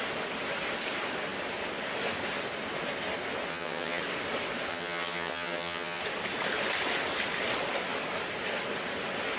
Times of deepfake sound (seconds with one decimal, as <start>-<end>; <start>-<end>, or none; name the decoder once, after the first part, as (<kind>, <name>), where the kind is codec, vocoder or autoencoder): 3.5-4.0 (vocoder, HiFi-GAN); 4.7-6.0